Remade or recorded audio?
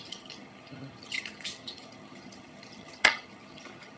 remade